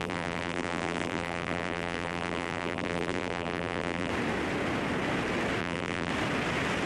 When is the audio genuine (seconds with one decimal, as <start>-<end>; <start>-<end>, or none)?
4.1-5.6; 6.1-6.9